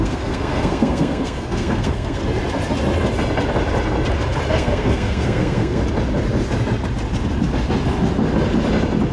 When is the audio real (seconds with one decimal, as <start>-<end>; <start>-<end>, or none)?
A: 2.2-4.5; 5.8-9.1